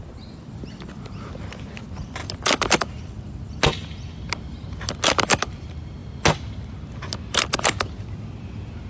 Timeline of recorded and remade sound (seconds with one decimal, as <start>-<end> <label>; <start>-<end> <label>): 0.0-8.9 recorded

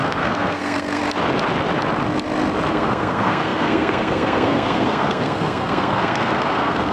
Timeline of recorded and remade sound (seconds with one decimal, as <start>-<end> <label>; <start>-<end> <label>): 0.0-1.0 remade; 1.0-2.7 recorded; 2.7-6.9 remade

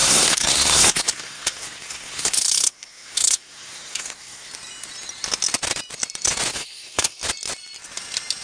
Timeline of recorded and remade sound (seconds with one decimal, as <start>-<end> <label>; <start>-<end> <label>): 0.0-4.5 remade; 4.5-6.5 recorded; 6.5-7.2 remade; 7.2-8.4 recorded